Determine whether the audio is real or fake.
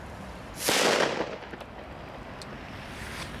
real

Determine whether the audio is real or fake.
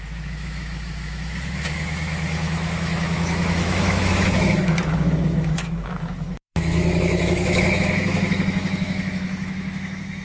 fake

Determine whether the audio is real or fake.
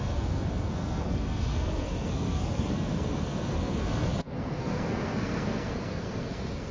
fake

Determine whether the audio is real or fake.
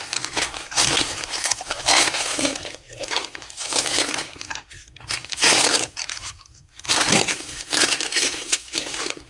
fake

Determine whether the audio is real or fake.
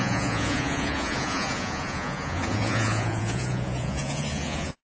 fake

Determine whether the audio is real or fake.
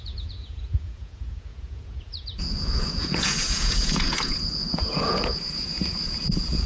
fake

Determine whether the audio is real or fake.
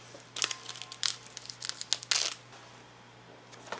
real